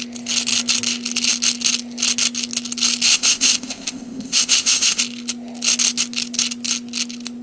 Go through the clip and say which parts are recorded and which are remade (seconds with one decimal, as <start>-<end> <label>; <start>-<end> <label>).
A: 0.0-3.1 recorded; 3.1-5.0 remade; 5.0-7.4 recorded